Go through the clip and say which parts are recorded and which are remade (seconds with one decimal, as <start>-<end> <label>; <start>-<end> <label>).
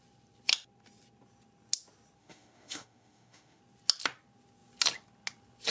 0.0-2.2 recorded; 2.2-3.6 remade; 3.6-5.7 recorded